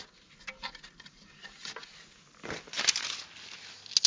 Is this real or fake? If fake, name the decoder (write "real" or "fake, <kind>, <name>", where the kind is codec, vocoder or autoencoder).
real